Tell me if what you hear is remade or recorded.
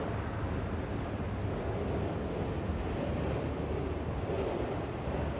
recorded